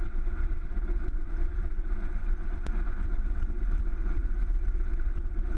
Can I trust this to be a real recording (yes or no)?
no